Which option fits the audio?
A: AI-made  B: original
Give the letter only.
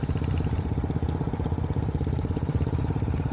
B